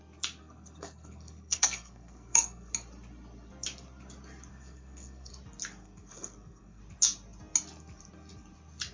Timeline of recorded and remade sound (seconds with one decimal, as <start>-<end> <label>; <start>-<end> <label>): 0.0-0.4 recorded; 0.4-2.7 remade; 2.7-4.5 recorded; 4.5-5.3 remade; 5.3-5.8 recorded; 5.8-6.8 remade; 6.8-8.9 recorded